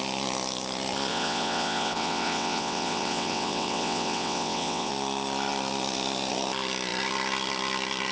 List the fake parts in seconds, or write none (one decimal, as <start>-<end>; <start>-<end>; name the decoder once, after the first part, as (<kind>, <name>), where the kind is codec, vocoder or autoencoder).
1.1-4.9 (vocoder, WaveNeXt)